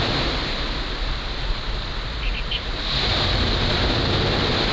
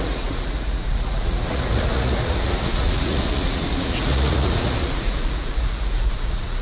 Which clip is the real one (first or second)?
first